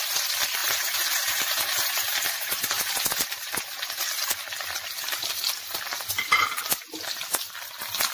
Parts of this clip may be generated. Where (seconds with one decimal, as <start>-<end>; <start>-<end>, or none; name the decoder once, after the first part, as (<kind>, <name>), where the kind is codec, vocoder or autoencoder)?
0.6-4.0 (vocoder, BigVGAN v2)